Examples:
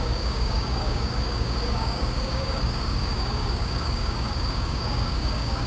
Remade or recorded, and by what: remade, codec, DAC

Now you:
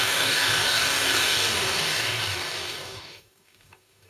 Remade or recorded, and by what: remade, codec, DAC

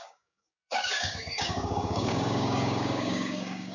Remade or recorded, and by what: remade, codec, DAC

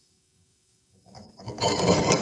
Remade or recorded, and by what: remade, codec, DAC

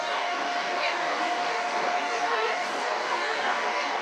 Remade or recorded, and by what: remade, codec, DAC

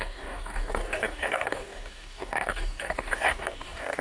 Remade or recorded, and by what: remade, codec, DAC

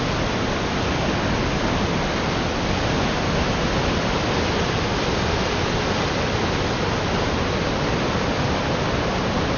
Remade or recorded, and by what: recorded